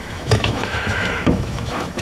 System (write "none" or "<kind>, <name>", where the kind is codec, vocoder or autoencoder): autoencoder, DAC-VAE